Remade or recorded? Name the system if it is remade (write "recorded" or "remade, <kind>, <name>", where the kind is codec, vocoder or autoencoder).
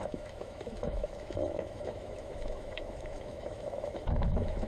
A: remade, autoencoder, DAC-VAE